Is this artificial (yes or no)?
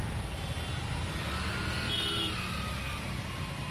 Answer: no